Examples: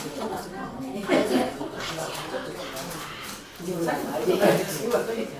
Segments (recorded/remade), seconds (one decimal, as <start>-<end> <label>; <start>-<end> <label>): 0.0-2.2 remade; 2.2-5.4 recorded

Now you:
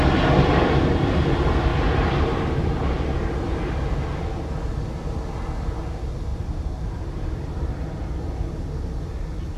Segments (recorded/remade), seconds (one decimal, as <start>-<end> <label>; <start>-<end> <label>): 0.0-1.7 recorded; 1.7-3.7 remade; 3.7-6.3 recorded; 6.3-8.2 remade; 8.2-9.6 recorded

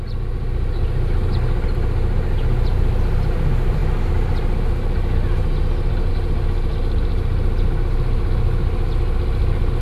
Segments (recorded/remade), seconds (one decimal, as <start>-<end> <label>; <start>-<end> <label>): 0.0-9.8 recorded